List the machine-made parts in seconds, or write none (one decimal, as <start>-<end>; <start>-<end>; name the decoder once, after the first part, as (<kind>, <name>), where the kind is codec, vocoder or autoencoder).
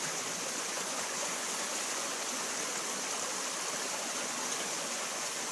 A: 0.0-2.7 (vocoder, Vocos); 3.9-5.5